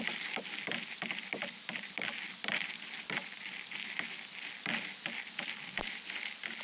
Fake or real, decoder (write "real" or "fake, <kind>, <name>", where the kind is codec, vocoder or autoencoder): real